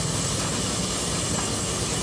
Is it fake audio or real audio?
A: real